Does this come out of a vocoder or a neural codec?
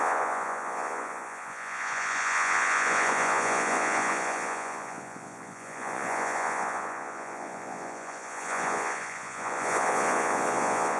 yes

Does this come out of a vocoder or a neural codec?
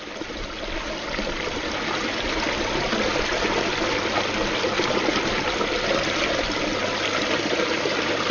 no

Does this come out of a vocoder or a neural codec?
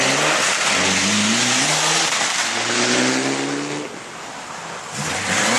no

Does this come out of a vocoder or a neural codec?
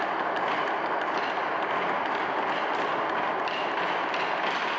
no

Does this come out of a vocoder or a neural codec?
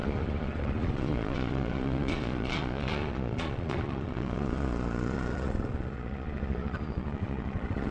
yes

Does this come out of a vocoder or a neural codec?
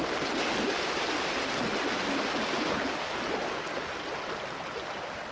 no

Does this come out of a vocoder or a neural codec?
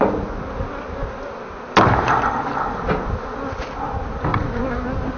no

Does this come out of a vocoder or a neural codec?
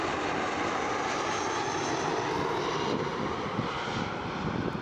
no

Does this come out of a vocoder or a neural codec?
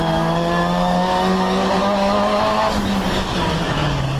yes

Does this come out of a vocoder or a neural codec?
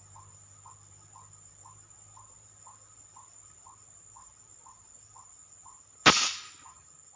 no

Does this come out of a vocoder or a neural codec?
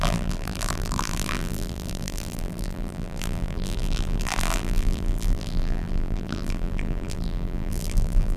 yes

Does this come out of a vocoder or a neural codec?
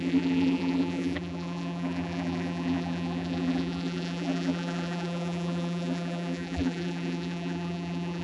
yes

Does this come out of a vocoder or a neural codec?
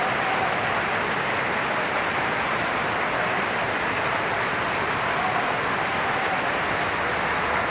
no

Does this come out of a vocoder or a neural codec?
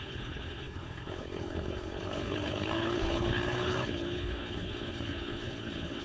yes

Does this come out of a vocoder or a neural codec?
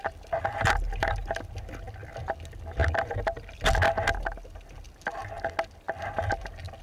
no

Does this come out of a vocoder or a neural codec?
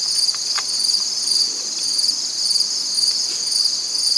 no